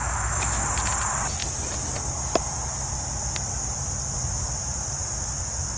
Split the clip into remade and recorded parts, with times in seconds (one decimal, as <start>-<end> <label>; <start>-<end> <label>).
0.0-0.6 remade; 0.6-5.8 recorded